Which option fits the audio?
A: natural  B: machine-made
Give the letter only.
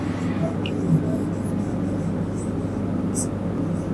A